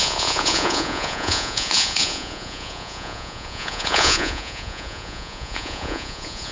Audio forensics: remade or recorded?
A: remade